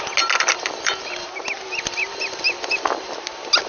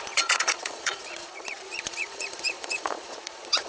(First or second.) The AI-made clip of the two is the second